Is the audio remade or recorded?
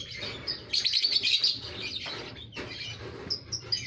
recorded